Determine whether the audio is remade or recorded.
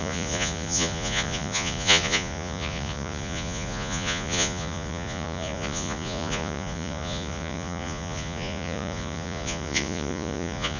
remade